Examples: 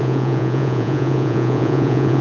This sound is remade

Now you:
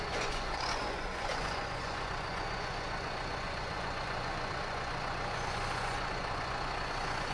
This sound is remade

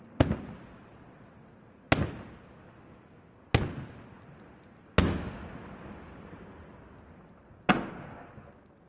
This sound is recorded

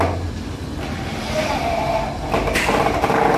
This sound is recorded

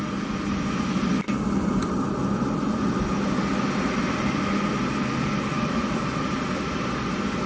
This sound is recorded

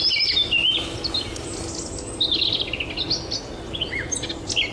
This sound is recorded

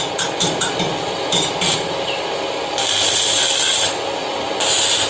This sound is recorded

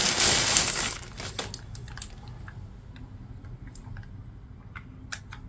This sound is recorded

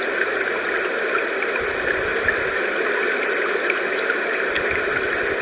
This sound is recorded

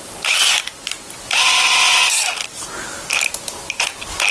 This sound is recorded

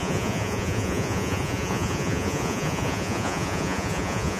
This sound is remade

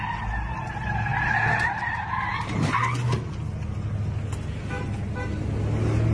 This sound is recorded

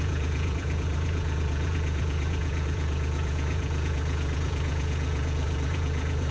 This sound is remade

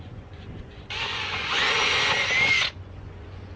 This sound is remade